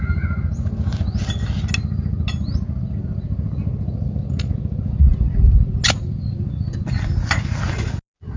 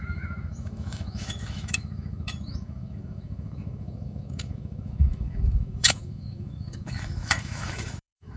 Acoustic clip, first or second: first